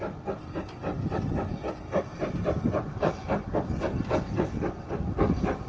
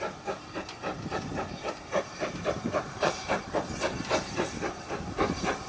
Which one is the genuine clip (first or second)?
first